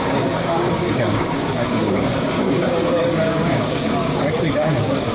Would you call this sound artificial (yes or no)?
yes